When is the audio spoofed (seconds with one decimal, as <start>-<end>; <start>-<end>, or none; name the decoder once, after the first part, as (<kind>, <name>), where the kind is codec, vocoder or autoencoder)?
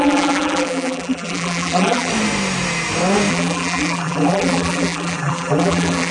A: 0.0-2.1 (vocoder, BigVGAN v2); 3.3-6.1